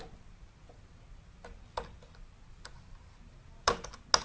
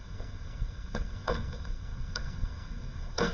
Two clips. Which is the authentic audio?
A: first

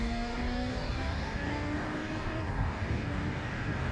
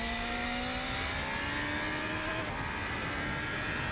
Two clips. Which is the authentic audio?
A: second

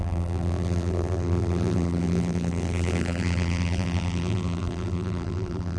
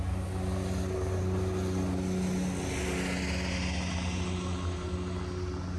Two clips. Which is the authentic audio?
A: second